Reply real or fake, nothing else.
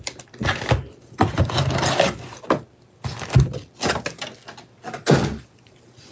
real